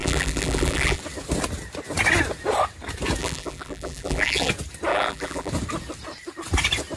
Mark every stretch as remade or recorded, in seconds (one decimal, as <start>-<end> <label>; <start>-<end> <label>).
0.0-1.0 remade; 1.0-3.2 recorded; 3.2-4.5 remade; 4.5-4.9 recorded; 4.9-5.5 remade; 5.5-7.0 recorded